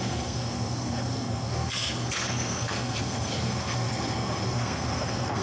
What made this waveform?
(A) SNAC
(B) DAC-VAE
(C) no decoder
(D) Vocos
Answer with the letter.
A